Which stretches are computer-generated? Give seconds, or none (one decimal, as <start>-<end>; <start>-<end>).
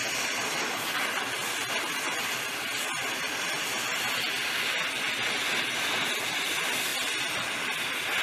none